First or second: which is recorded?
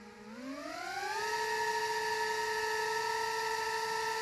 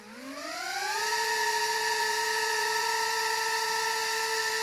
first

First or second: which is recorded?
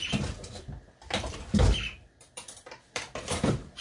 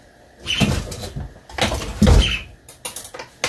second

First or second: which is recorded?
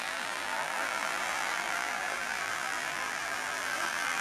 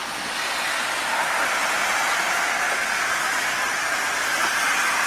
second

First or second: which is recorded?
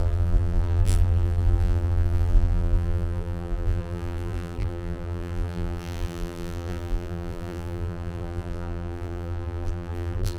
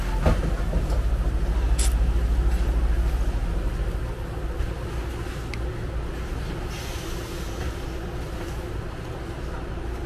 second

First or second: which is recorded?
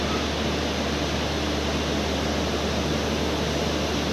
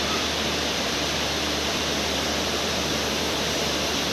first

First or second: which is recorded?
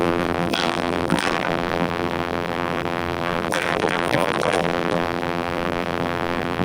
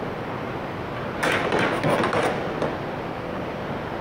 second